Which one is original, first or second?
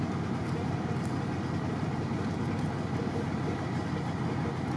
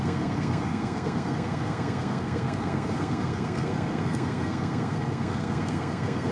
first